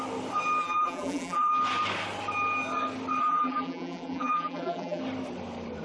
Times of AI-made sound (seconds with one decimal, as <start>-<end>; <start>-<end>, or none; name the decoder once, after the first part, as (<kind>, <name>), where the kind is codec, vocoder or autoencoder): 0.6-1.5 (vocoder, BigVGAN v2); 3.2-5.0